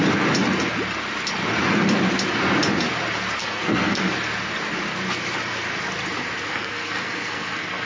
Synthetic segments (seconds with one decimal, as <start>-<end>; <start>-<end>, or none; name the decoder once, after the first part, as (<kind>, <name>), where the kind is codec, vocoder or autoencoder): 3.4-4.1 (codec, SNAC); 6.5-7.9